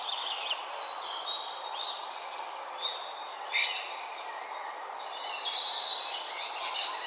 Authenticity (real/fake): fake